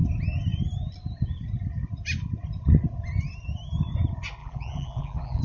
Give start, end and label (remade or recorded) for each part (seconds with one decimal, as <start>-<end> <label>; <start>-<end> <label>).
0.0-4.4 recorded; 4.4-5.4 remade